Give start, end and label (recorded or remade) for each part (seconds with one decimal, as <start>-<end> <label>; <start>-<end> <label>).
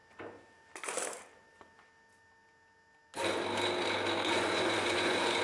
0.0-4.2 recorded; 4.2-5.4 remade